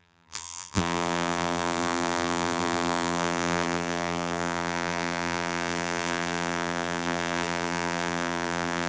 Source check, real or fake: fake